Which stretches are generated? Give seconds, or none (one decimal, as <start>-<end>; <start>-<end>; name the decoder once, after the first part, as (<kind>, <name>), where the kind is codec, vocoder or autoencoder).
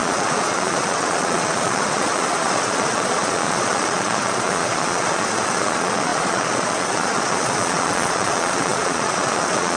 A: 0.0-9.8 (vocoder, Vocos)